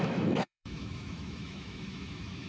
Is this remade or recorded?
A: remade